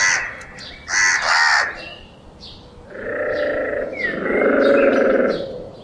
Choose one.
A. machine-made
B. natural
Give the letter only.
B